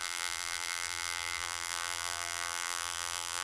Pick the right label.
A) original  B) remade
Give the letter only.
B